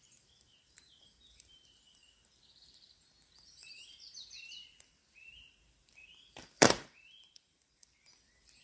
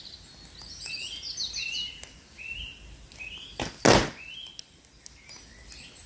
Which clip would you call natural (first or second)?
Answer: second